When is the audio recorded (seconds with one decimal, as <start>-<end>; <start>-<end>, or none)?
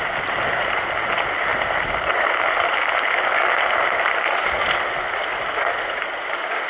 0.0-6.7